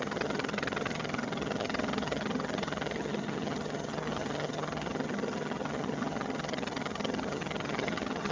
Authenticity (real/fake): fake